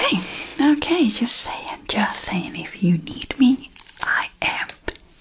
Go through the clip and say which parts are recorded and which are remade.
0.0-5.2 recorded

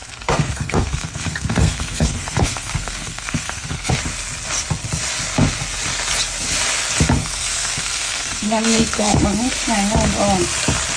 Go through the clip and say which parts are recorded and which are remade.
0.0-3.9 remade; 3.9-7.2 recorded; 7.2-9.2 remade; 9.2-11.0 recorded

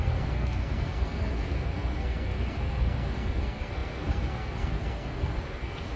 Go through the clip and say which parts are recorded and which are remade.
0.0-6.0 remade

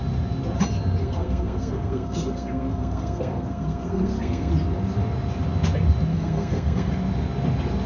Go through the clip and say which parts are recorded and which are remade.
0.0-1.0 recorded; 1.0-4.5 remade; 4.5-6.1 recorded; 6.1-6.9 remade; 6.9-7.9 recorded

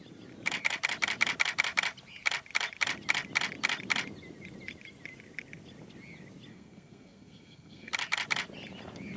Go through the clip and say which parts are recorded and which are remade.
0.0-6.5 recorded; 6.5-7.9 remade; 7.9-9.2 recorded